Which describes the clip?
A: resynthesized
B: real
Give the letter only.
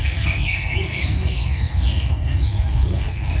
A